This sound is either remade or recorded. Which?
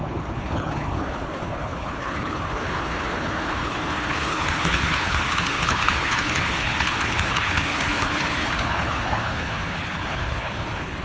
remade